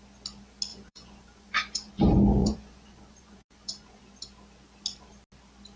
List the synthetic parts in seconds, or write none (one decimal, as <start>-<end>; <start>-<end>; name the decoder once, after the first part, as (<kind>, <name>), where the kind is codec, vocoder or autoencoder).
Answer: 0.7-1.9 (vocoder, Vocos); 2.4-4.0